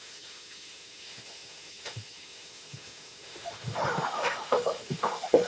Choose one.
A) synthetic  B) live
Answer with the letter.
A